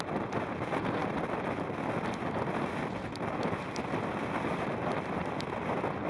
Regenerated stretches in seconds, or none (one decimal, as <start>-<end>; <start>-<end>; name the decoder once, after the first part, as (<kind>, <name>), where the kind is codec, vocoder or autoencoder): none